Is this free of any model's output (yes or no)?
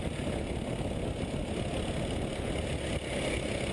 yes